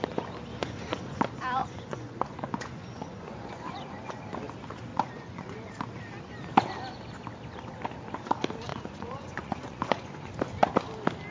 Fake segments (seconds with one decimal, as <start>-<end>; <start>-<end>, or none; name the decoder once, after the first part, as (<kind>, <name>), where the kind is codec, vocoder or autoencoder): 0.5-1.2 (vocoder, Vocos); 1.6-4.2; 4.9-5.7; 8.7-10.3